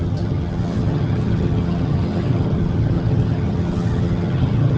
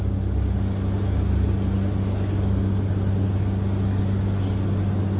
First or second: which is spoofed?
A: first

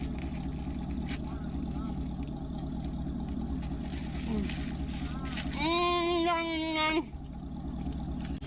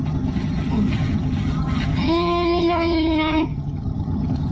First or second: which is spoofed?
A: second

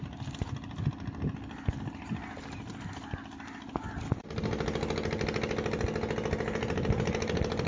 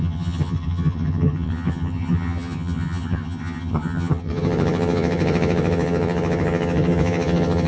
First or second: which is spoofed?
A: second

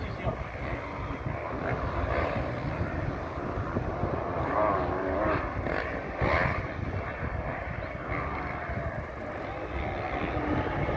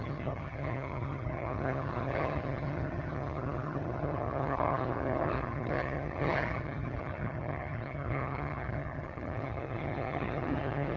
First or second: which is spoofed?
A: second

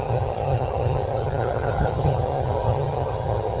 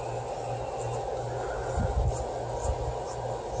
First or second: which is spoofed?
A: first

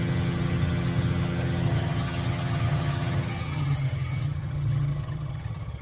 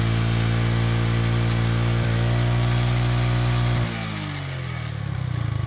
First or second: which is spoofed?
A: first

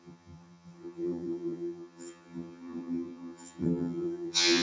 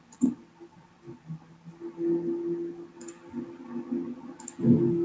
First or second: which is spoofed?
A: first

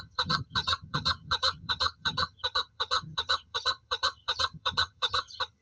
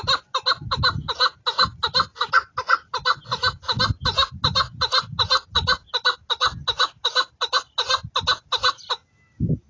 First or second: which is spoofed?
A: first